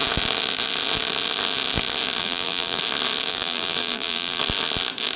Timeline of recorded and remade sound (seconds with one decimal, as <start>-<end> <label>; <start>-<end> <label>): 0.0-2.2 recorded; 2.2-2.8 remade; 2.8-3.3 recorded; 3.3-4.4 remade; 4.4-5.2 recorded

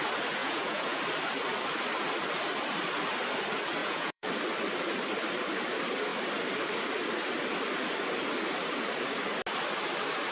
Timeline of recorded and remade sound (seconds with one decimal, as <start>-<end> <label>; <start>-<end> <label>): 0.0-0.4 recorded; 0.4-1.0 remade; 1.0-3.8 recorded; 3.8-4.3 remade; 4.3-10.3 recorded

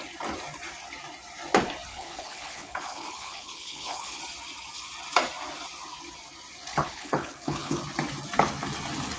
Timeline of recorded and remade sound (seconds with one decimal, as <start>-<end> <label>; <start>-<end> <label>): 0.0-1.9 recorded; 1.9-4.2 remade; 4.2-6.7 recorded; 6.7-7.8 remade; 7.8-9.2 recorded